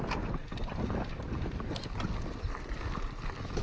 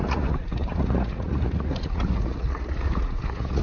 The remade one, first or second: second